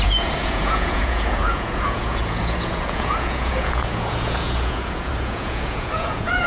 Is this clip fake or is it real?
fake